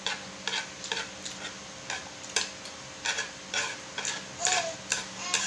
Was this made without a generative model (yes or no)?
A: yes